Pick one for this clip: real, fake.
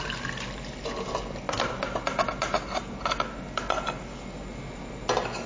real